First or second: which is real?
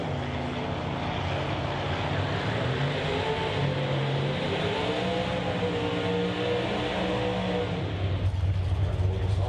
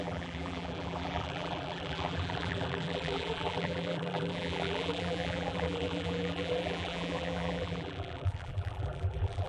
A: first